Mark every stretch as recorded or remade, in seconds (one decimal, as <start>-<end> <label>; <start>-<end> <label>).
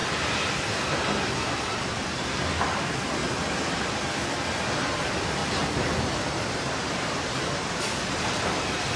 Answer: 0.0-3.2 remade; 3.2-3.8 recorded; 3.8-5.4 remade; 5.4-6.5 recorded; 6.5-9.0 remade